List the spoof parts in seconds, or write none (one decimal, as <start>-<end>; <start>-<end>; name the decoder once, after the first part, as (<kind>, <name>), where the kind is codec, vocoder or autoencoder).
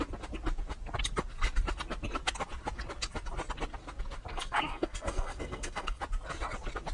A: 4.3-6.0 (codec, SNAC)